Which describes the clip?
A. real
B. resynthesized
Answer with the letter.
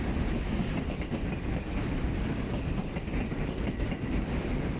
A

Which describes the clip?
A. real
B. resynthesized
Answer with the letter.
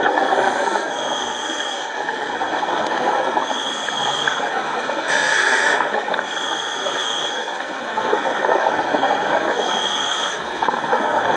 B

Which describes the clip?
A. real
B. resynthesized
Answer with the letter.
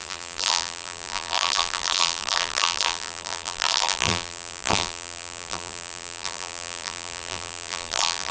B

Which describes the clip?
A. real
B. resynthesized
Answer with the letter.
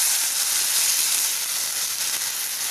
A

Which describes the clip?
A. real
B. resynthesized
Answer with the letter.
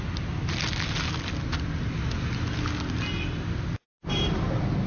A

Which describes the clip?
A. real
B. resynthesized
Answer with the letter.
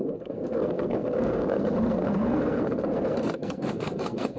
B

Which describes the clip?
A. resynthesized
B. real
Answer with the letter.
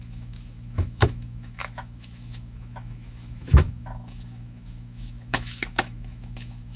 A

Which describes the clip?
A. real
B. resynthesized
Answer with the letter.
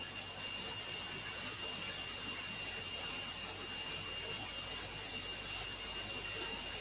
A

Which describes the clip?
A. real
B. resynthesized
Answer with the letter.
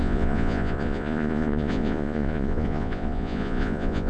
B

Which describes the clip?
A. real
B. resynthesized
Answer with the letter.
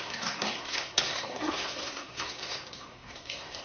B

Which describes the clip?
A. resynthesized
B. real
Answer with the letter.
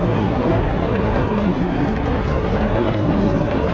A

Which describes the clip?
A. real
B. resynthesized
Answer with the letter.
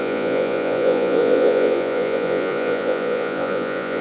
B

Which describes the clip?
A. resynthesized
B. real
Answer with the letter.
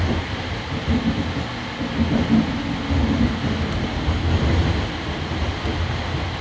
B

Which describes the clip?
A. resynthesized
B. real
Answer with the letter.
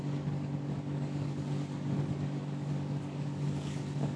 A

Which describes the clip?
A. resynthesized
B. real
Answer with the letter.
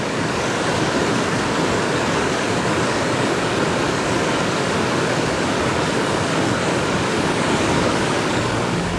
A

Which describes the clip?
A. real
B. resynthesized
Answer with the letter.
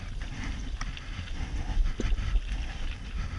A